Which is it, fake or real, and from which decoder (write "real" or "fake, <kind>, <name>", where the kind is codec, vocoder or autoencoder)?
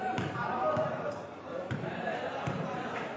fake, vocoder, BigVGAN v2